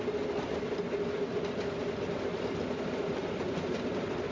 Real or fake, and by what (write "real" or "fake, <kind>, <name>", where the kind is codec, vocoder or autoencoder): real